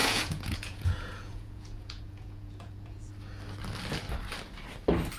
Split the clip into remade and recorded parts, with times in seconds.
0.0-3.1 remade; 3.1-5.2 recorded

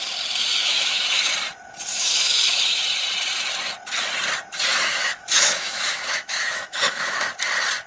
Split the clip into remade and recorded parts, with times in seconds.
0.0-0.4 recorded; 0.4-1.3 remade; 1.3-1.9 recorded; 1.9-2.8 remade; 2.8-4.7 recorded; 4.7-7.3 remade; 7.3-7.9 recorded

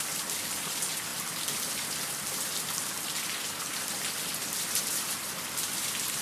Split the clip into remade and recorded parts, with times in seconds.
0.0-6.2 recorded

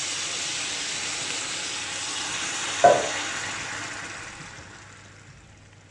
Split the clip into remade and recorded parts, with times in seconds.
0.0-5.9 recorded

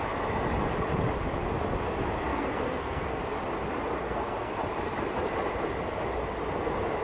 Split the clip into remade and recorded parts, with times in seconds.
0.0-2.3 recorded; 2.3-3.2 remade; 3.2-4.0 recorded; 4.0-4.5 remade; 4.5-7.0 recorded

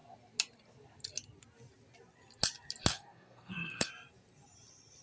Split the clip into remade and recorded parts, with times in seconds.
0.0-2.9 recorded; 2.9-3.9 remade; 3.9-5.0 recorded

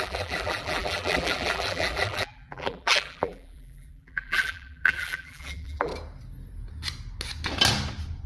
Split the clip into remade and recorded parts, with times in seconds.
0.0-5.9 remade; 5.9-8.3 recorded